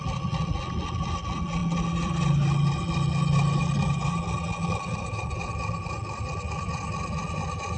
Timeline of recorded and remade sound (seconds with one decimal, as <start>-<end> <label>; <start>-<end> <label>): 0.0-7.8 recorded